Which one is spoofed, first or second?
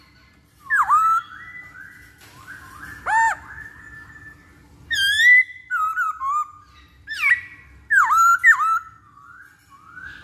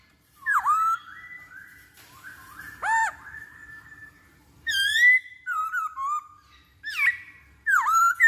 second